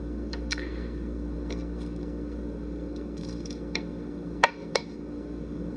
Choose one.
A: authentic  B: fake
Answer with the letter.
B